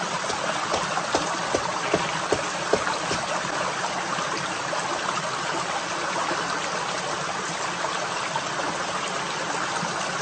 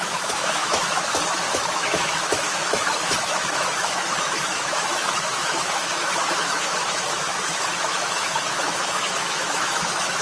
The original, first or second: first